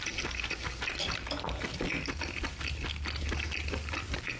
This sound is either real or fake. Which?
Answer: real